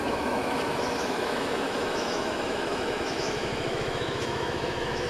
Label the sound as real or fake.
fake